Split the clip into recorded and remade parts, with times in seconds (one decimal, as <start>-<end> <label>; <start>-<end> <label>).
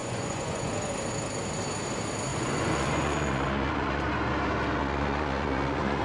0.0-0.7 remade; 0.7-2.3 recorded; 2.3-4.0 remade; 4.0-4.8 recorded; 4.8-6.0 remade